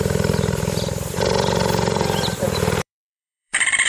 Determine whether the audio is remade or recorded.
remade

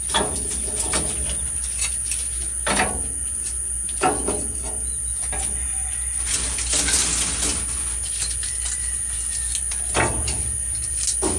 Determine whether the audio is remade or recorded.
recorded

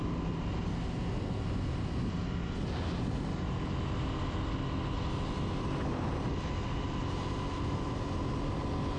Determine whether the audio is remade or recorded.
recorded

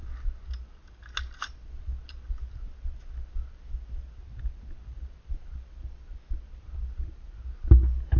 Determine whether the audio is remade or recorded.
recorded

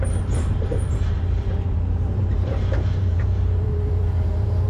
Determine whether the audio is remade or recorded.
remade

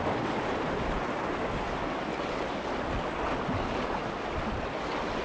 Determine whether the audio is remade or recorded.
recorded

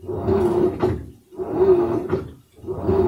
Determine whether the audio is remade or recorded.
recorded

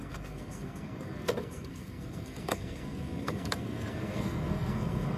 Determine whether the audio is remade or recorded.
remade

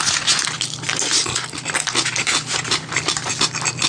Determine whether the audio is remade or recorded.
recorded